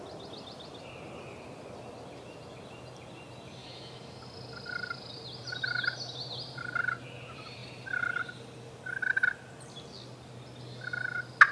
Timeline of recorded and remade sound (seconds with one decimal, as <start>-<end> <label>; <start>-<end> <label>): 0.0-3.6 recorded; 3.6-4.2 remade; 4.2-11.5 recorded